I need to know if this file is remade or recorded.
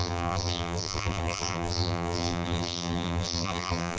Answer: remade